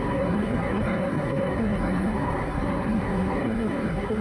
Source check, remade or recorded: remade